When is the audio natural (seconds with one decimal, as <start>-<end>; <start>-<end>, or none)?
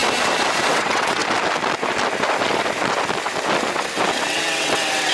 0.0-0.7; 1.2-4.3